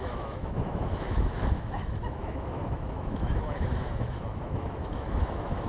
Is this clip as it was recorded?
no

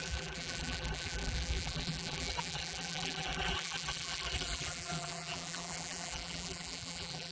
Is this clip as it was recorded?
no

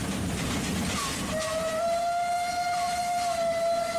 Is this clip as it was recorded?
yes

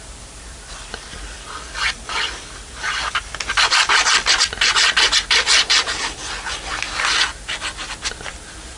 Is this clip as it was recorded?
yes